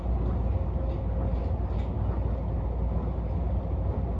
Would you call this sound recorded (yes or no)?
yes